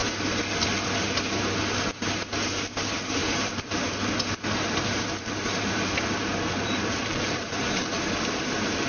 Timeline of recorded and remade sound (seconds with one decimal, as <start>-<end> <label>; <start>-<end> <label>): 0.0-3.2 recorded; 3.2-8.0 remade; 8.0-8.9 recorded